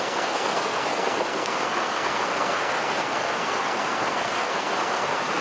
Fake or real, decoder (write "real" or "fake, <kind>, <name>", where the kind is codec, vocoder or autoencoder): fake, codec, SNAC